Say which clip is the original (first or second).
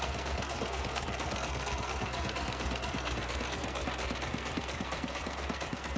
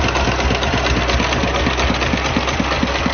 second